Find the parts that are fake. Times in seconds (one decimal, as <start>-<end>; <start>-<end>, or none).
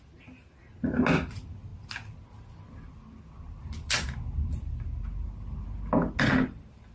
none